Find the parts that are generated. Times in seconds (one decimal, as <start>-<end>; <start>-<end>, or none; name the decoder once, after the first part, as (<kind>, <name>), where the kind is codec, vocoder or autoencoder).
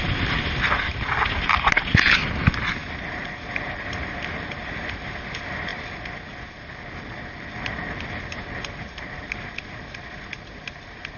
none